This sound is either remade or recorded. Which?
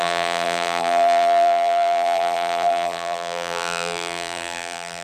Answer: remade